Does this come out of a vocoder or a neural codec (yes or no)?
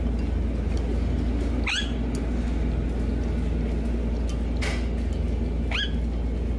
no